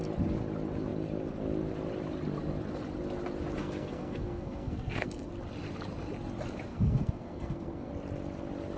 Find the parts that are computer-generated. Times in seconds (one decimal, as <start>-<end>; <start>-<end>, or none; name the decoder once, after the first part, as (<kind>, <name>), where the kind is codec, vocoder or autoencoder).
3.6-5.3 (codec, SNAC); 6.7-7.9